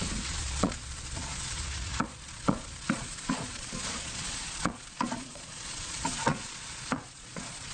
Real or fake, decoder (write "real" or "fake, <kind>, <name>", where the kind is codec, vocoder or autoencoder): fake, vocoder, Vocos